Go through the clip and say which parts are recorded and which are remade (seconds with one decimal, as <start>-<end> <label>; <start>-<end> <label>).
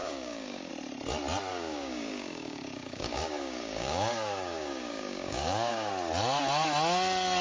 0.0-0.7 remade; 0.7-1.5 recorded; 1.5-5.9 remade; 5.9-7.4 recorded